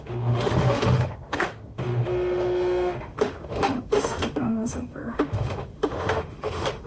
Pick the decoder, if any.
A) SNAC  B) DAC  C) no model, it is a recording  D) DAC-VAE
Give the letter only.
D